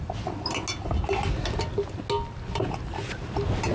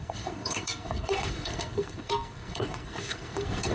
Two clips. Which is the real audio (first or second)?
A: first